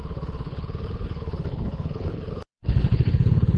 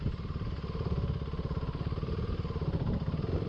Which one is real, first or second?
second